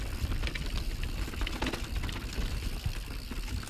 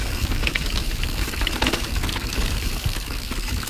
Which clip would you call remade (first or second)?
second